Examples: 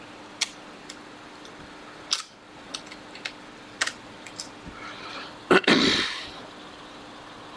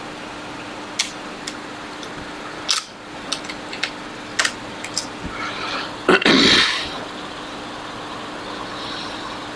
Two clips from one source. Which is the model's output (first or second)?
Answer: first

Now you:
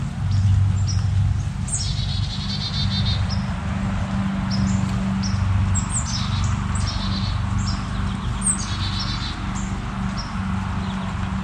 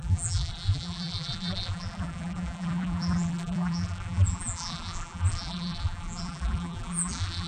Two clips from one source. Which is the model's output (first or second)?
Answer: second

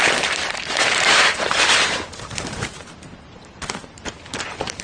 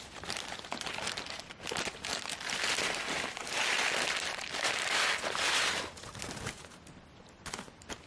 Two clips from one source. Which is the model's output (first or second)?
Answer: first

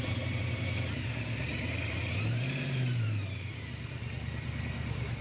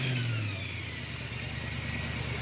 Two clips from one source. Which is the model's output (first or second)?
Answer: first